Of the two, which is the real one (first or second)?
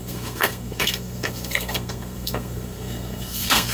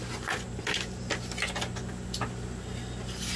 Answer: second